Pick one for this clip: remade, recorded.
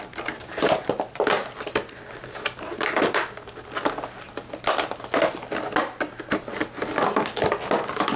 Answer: recorded